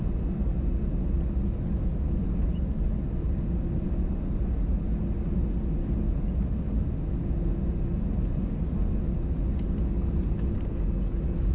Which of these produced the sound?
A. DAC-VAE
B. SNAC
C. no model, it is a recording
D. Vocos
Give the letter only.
C